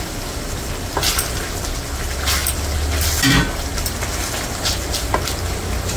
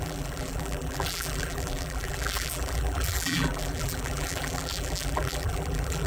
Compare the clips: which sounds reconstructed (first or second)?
second